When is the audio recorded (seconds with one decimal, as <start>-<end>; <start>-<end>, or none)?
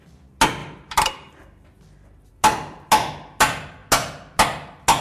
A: 0.0-5.0